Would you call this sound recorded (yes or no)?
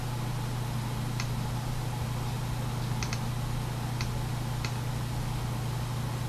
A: yes